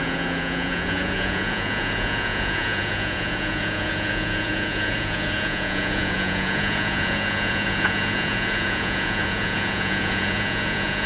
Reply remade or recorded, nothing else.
remade